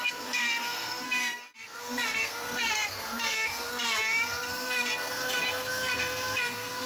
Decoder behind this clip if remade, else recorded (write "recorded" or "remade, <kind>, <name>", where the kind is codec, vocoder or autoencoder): remade, codec, SNAC